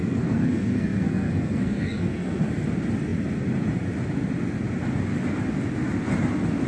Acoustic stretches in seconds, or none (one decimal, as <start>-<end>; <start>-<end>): 2.5-6.7

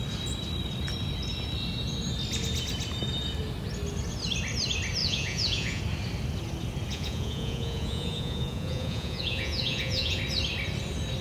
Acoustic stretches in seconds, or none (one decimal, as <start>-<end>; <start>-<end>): 0.0-5.0; 5.8-6.9; 10.2-11.2

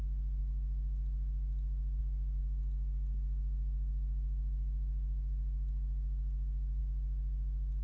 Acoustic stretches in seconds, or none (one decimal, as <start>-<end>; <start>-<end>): 0.0-7.8

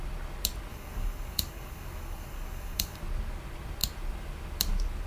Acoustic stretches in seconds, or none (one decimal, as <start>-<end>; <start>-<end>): 0.0-0.7; 3.0-5.1

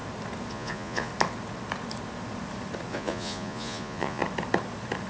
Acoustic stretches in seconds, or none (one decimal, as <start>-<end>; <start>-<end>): 0.0-0.5; 1.1-2.9; 4.2-5.1

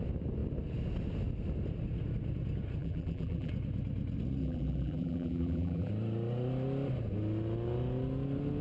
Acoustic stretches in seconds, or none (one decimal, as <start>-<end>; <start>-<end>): 0.0-2.8; 3.5-4.4; 5.9-8.6

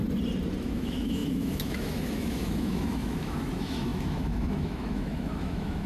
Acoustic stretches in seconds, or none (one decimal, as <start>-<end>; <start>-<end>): 0.0-0.6